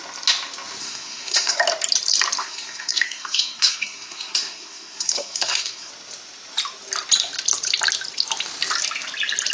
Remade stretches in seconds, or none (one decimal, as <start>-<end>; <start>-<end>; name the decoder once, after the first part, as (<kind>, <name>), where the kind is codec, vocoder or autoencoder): 0.8-1.6 (codec, SNAC); 2.4-5.9